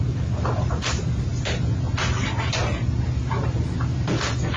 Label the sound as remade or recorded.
recorded